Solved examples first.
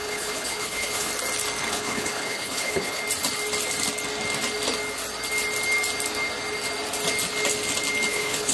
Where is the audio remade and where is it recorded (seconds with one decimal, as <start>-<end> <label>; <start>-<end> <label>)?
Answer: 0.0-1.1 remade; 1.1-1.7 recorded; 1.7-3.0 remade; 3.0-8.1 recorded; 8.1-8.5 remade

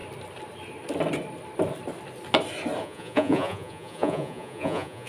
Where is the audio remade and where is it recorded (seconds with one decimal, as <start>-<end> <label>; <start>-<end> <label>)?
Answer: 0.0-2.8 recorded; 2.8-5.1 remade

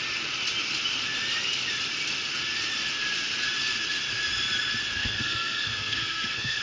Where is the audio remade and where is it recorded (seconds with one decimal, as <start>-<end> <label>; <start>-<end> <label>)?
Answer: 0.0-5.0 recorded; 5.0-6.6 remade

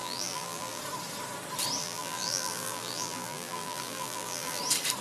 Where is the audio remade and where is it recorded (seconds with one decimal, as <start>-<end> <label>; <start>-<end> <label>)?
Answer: 0.0-0.8 remade; 0.8-1.8 recorded; 1.8-4.6 remade; 4.6-5.0 recorded